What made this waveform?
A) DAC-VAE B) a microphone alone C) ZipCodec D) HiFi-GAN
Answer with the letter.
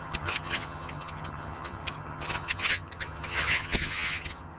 D